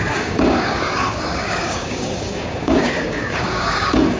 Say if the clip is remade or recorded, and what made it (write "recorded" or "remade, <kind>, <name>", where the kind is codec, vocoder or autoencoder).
remade, codec, DAC